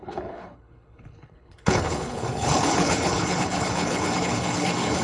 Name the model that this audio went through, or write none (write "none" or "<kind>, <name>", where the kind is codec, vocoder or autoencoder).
codec, HILCodec